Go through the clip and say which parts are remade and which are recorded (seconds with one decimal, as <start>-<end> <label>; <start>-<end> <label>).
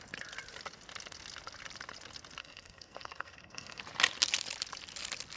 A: 0.0-2.4 recorded; 2.4-3.8 remade; 3.8-5.4 recorded